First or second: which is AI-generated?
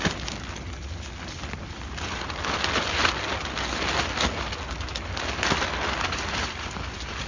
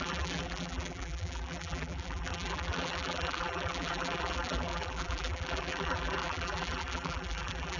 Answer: second